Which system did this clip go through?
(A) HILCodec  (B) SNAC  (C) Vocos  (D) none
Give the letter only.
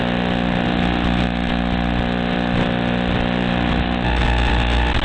D